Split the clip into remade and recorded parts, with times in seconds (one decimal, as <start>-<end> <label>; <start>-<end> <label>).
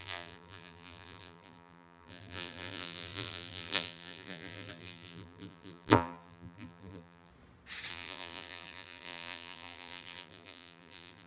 0.0-7.3 remade; 7.3-7.9 recorded; 7.9-11.3 remade